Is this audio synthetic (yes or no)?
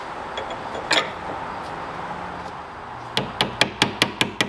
no